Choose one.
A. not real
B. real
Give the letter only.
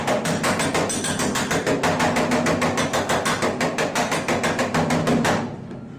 B